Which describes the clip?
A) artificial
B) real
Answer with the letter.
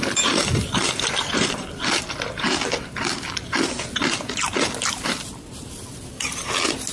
A